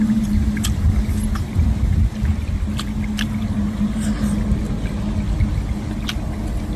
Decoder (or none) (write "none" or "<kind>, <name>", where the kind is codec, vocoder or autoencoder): none